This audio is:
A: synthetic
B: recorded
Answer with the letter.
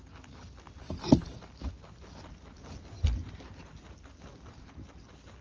B